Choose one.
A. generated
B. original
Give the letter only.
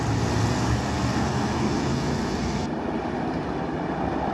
B